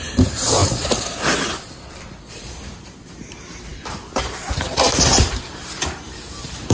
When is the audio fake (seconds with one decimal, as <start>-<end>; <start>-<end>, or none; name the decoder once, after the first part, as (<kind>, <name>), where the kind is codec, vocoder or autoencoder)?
0.0-0.6 (vocoder, BigVGAN v2); 2.3-6.7